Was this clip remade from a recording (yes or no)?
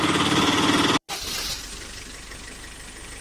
no